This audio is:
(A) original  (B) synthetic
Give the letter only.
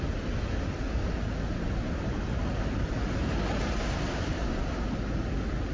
A